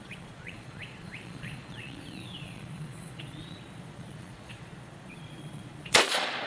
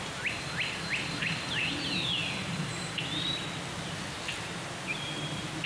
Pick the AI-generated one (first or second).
first